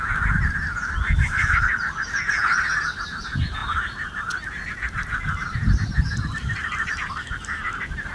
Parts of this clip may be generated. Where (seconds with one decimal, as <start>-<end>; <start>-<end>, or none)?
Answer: none